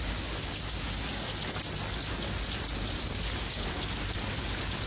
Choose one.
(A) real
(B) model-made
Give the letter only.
A